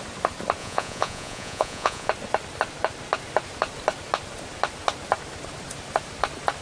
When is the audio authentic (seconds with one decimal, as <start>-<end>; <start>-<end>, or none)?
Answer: 0.0-0.6; 2.1-6.6